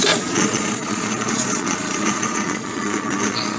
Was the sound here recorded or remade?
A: remade